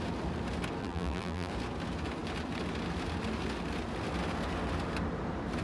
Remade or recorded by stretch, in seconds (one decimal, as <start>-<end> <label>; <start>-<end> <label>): 0.0-0.8 recorded; 0.8-1.5 remade; 1.5-5.6 recorded